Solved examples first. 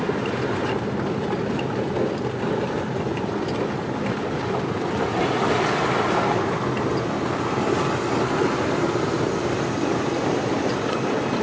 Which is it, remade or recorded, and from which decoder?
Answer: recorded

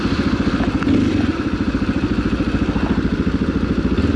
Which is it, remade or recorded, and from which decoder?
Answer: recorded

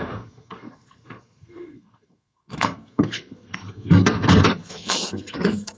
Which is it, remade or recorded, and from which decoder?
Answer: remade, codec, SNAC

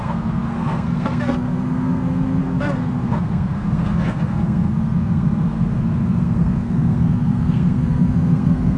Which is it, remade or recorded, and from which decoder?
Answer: remade, codec, SNAC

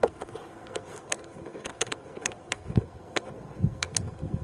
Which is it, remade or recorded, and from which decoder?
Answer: remade, codec, SNAC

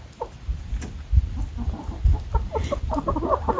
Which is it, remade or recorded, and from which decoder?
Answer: recorded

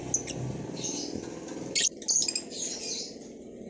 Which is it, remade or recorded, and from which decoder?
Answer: recorded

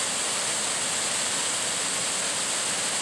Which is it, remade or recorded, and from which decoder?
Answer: recorded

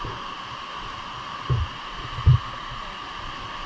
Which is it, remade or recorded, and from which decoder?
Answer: recorded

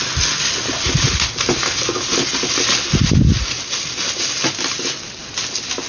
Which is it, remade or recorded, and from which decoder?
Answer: recorded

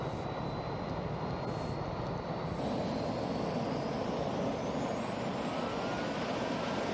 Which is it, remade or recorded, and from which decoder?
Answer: recorded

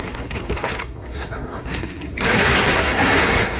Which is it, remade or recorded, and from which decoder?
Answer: remade, codec, SNAC